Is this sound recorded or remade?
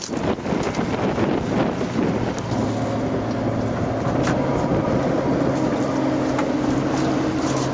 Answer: recorded